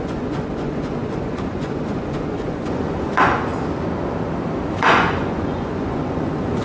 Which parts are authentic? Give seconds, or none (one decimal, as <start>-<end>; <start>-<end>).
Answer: 3.5-4.7